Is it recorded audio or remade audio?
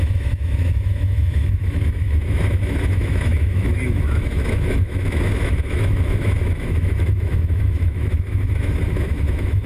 remade